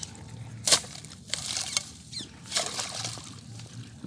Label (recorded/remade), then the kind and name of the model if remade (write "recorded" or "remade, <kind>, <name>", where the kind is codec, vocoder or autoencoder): recorded